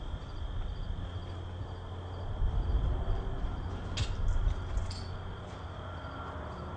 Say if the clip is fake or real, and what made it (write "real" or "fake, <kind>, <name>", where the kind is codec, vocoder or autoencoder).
real